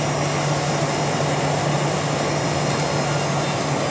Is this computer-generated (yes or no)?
no